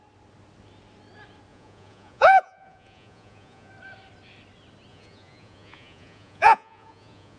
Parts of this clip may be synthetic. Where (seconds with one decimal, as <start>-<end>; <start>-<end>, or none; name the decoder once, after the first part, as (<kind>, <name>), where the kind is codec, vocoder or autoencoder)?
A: 1.5-3.7 (vocoder, Vocos); 4.9-7.4